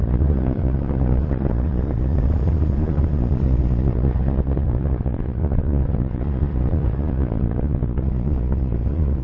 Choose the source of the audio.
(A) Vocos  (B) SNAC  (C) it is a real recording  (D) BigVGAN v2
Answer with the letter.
A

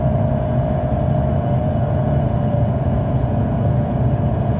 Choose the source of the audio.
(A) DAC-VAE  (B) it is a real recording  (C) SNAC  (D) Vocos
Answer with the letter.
D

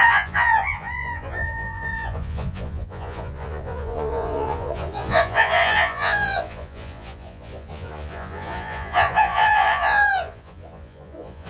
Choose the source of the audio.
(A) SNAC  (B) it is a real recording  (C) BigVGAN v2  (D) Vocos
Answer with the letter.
D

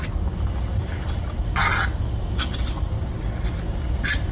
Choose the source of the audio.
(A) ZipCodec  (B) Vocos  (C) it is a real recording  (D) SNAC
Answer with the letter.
C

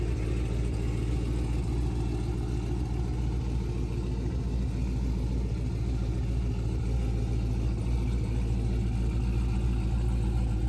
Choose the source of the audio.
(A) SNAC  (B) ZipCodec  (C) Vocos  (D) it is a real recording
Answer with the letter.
D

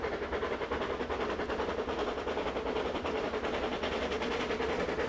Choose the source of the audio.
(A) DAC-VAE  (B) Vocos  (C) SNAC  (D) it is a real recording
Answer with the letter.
D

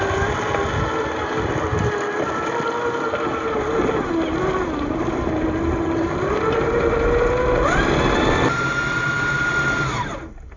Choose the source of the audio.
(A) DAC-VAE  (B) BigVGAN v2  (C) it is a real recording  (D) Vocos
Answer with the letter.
C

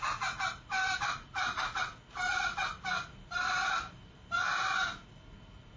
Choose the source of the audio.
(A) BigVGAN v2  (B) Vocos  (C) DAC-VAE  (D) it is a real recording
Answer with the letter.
D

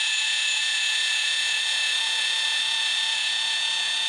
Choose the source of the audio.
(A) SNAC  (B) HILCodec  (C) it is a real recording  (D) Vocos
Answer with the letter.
D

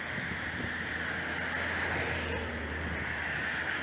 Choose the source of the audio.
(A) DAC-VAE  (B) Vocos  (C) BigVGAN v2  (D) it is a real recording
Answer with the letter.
D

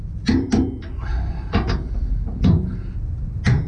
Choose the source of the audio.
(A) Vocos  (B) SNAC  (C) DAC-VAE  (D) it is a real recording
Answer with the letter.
D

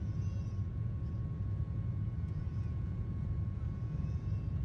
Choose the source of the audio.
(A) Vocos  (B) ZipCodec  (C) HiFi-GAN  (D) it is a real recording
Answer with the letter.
A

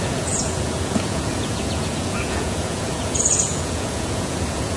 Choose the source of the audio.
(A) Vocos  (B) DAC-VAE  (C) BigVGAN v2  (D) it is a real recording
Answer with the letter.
A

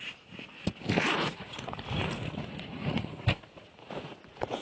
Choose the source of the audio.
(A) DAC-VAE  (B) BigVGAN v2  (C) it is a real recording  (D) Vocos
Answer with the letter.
D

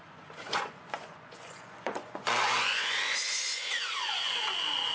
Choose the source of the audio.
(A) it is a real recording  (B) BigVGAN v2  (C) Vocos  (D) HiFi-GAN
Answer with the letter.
C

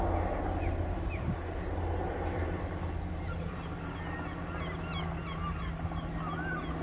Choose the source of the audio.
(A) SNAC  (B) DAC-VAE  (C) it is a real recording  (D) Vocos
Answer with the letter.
C